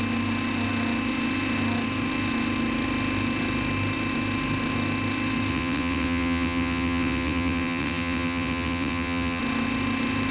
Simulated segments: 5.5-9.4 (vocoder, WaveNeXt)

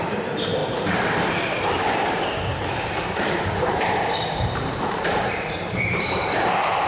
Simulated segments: 0.0-6.9 (vocoder, BigVGAN v2)

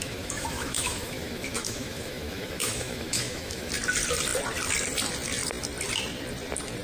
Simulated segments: 0.0-3.7 (autoencoder, DAC-VAE)